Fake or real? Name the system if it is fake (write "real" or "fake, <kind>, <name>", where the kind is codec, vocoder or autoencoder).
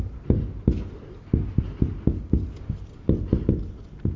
real